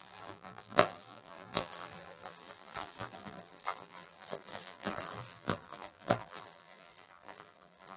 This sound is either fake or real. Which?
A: fake